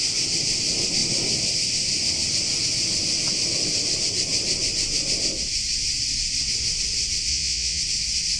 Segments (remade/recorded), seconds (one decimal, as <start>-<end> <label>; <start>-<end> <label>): 0.0-7.3 recorded; 7.3-7.8 remade; 7.8-8.4 recorded